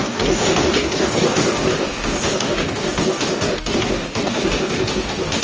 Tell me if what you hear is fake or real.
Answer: fake